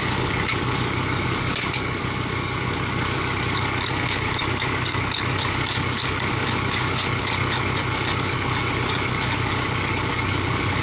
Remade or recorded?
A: remade